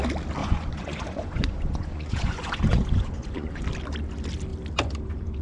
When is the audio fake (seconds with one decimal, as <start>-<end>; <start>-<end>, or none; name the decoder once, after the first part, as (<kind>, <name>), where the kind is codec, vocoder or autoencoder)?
0.4-3.6 (vocoder, Vocos)